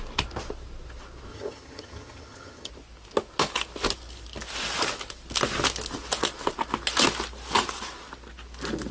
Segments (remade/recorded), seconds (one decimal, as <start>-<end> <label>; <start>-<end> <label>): 0.0-1.3 recorded; 1.3-2.7 remade; 2.7-8.9 recorded